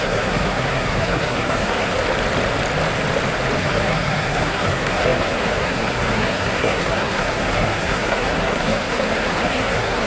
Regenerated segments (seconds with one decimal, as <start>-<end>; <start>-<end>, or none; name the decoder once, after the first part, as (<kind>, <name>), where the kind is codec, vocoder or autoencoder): 0.0-2.0 (codec, SNAC); 3.6-10.1